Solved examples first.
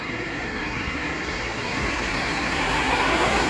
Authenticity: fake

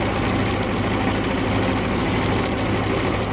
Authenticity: real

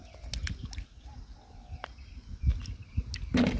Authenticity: real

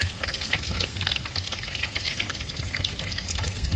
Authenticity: fake